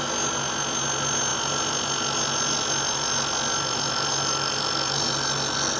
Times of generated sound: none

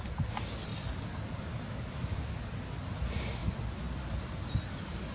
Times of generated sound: none

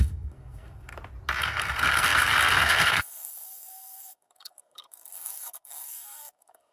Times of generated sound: 0.0-0.9 (codec, SNAC); 1.4-6.7

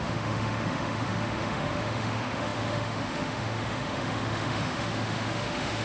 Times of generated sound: 0.0-5.8 (autoencoder, DAC-VAE)

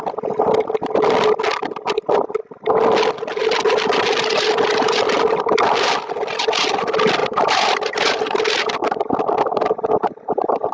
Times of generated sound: 7.2-8.4 (vocoder, BigVGAN v2)

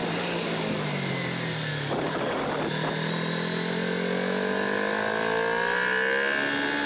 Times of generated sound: 0.0-0.7 (codec, DAC); 1.7-2.5

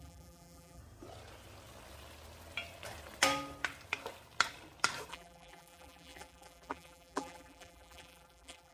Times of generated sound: 0.0-0.8 (vocoder, BigVGAN v2); 5.1-8.7

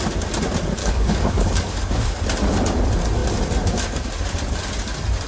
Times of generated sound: 0.8-2.2 (codec, DAC)